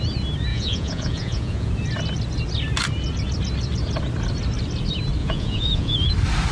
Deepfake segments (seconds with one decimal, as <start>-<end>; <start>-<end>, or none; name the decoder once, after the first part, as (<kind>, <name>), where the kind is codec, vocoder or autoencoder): 0.5-1.7 (vocoder, Vocos); 5.2-6.1